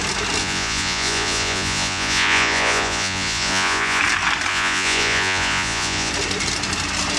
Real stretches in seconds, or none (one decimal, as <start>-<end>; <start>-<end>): 0.0-0.4; 4.0-4.5; 6.1-7.2